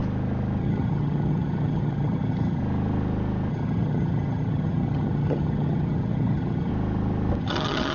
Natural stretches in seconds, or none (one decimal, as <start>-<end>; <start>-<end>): 0.0-0.6; 2.6-3.5; 6.7-7.4